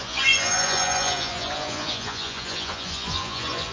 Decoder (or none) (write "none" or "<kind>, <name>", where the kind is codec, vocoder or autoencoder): vocoder, Vocos